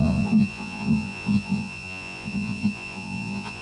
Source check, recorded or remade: remade